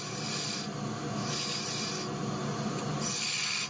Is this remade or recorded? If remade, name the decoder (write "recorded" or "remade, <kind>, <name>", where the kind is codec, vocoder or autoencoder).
recorded